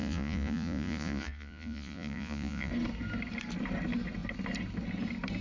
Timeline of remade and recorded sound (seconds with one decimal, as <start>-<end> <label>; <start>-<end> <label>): 0.0-2.7 remade; 2.7-5.4 recorded